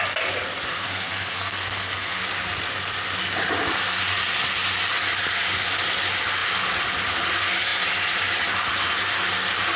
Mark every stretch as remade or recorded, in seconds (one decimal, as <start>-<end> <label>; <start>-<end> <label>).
0.0-0.7 recorded; 0.7-2.2 remade; 2.2-9.8 recorded